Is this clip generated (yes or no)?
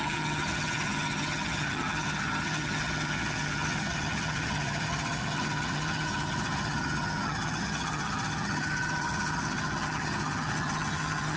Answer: yes